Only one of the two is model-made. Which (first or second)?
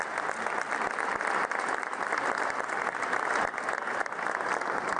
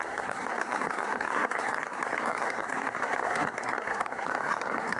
second